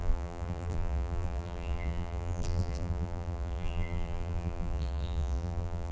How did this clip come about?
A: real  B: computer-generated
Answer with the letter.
B